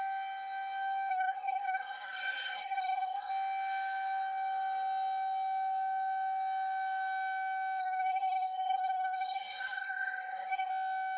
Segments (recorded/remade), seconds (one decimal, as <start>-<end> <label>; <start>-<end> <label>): 0.0-1.1 recorded; 1.1-3.3 remade; 3.3-7.8 recorded; 7.8-10.7 remade; 10.7-11.2 recorded